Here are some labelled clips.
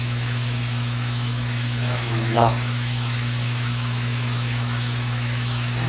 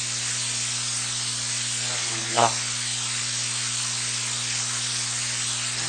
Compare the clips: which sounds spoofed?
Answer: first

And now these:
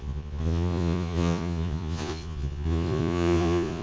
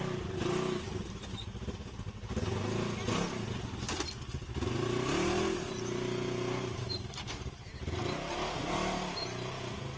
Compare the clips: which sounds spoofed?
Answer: first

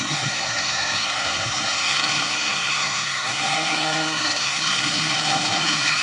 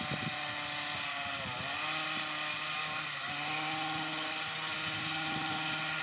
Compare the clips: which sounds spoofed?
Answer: first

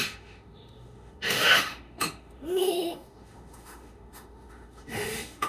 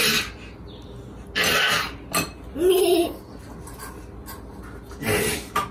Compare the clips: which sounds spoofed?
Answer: first